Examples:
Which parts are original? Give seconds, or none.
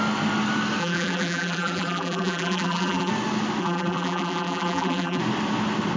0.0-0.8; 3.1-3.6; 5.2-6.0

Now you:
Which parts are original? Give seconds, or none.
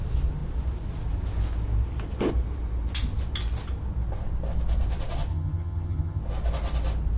0.0-5.3; 6.2-7.2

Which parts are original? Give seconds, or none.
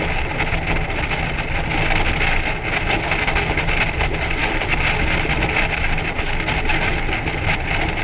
0.0-8.0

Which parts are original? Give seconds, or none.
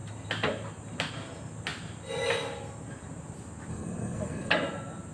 0.0-3.7; 4.5-5.1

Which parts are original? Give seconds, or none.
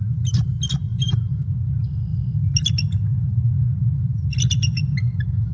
0.0-5.5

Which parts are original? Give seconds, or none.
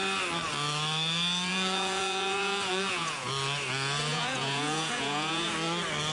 0.0-1.5; 3.3-4.1; 5.5-6.1